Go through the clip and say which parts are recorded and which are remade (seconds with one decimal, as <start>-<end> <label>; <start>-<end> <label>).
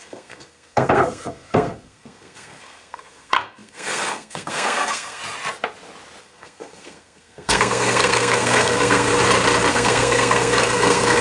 0.0-5.2 remade; 5.2-6.2 recorded; 6.2-9.1 remade; 9.1-9.7 recorded; 9.7-11.2 remade